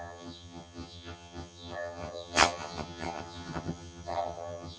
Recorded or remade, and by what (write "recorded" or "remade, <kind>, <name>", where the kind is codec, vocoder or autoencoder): remade, vocoder, HiFi-GAN